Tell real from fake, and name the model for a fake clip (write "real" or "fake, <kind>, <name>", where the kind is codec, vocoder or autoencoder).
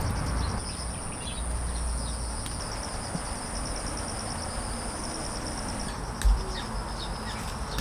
real